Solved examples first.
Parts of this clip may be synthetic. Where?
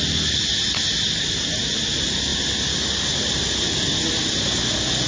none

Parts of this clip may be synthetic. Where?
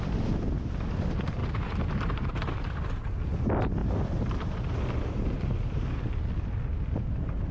none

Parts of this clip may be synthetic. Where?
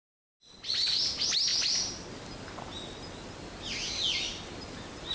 none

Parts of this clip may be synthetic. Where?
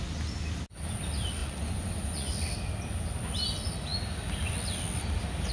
1.4-2.3 (vocoder, Vocos)